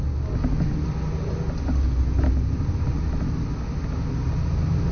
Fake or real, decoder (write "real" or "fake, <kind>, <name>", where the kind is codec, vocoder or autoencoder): real